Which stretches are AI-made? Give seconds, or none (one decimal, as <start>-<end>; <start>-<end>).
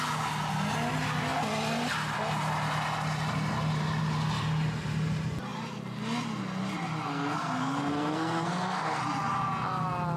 7.1-9.0